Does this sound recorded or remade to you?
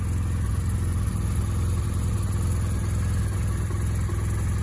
recorded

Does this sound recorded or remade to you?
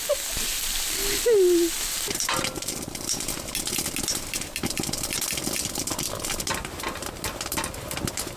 recorded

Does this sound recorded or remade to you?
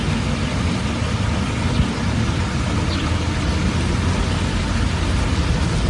recorded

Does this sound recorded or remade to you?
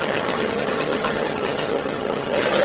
remade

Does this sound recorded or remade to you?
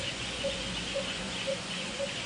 remade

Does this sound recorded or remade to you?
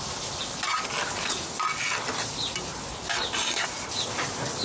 recorded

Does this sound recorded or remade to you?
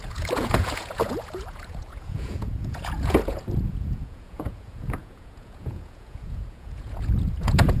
remade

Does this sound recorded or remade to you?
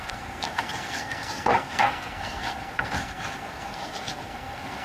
remade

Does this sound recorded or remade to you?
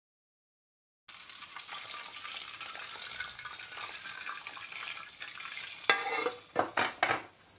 recorded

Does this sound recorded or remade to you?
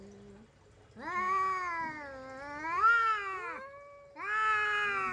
recorded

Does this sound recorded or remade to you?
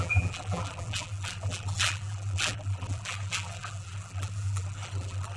remade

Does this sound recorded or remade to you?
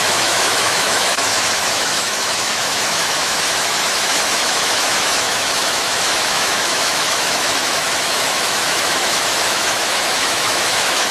remade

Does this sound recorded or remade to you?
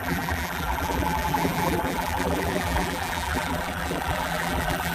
remade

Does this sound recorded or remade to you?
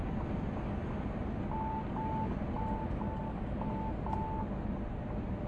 recorded